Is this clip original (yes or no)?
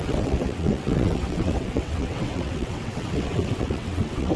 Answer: no